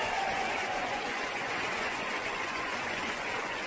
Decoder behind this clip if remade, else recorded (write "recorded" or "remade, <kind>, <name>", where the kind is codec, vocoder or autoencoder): remade, vocoder, Vocos